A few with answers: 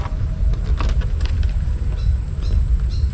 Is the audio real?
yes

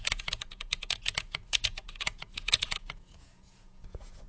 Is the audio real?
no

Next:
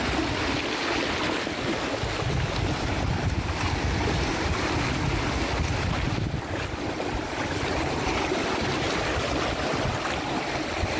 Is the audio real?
yes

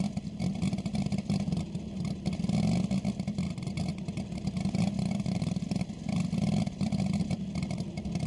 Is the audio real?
yes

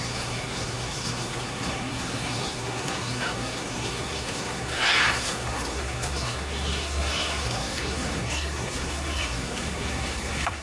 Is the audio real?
no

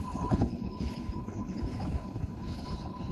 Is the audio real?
no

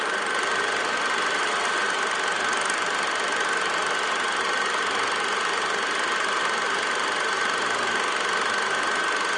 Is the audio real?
yes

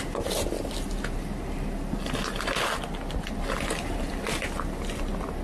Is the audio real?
yes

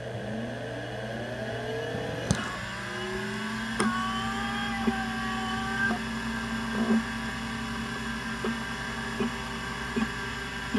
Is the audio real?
yes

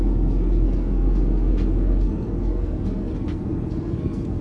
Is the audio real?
no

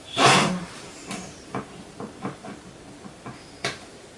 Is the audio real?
no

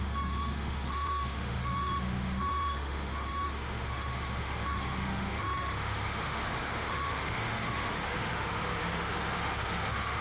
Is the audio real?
no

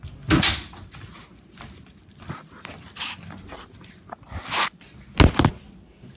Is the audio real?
yes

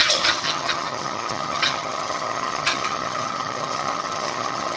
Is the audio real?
no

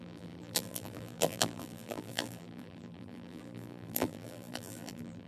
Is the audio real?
no